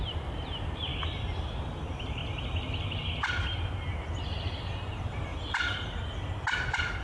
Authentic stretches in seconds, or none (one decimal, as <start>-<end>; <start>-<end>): 0.9-1.8; 2.2-4.6; 5.3-7.0